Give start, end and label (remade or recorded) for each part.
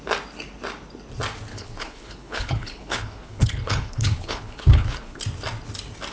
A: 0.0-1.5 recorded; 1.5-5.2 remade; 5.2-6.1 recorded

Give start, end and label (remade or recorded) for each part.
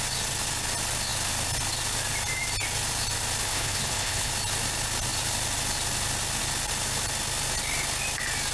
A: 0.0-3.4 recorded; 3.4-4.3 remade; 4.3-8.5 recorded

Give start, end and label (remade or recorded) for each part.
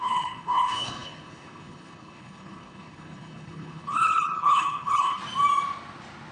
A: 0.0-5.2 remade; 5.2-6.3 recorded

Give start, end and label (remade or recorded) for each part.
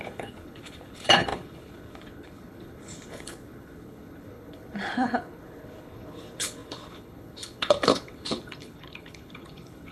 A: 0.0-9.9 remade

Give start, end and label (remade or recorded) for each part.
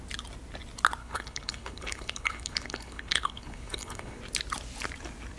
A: 0.0-1.0 recorded; 1.0-4.2 remade; 4.2-5.4 recorded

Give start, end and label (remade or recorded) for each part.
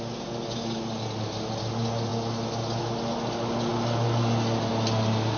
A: 0.0-5.4 recorded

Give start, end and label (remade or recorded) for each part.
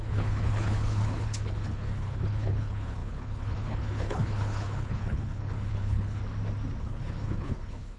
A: 0.0-6.2 remade; 6.2-6.8 recorded; 6.8-8.0 remade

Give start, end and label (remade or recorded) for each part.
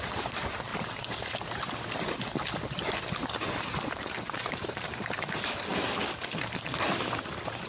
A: 0.0-7.7 recorded